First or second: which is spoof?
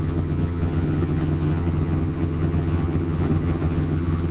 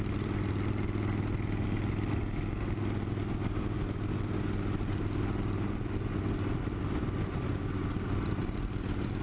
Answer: first